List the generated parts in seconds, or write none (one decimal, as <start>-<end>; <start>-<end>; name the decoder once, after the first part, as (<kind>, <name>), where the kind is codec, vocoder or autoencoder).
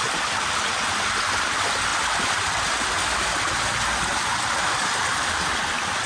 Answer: 1.9-5.6 (vocoder, BigVGAN v2)